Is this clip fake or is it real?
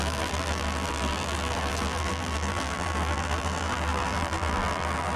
fake